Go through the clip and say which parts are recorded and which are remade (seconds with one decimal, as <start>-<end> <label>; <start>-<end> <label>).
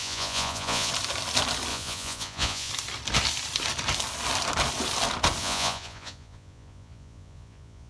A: 0.0-0.9 remade; 0.9-1.7 recorded; 1.7-2.7 remade; 2.7-5.4 recorded; 5.4-7.9 remade